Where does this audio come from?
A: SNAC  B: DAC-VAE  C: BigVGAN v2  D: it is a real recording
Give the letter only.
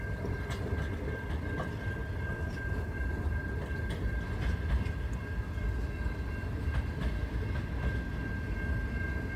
D